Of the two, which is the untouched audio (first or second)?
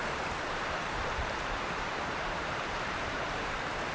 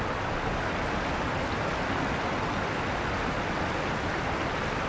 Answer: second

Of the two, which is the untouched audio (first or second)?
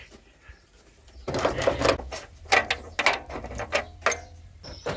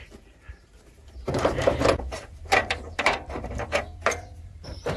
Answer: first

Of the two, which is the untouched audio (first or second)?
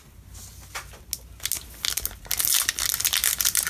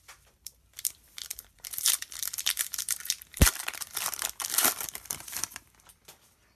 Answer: first